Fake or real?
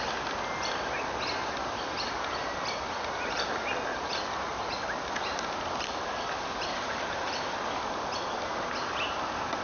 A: real